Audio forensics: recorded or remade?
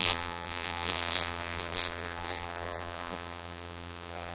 remade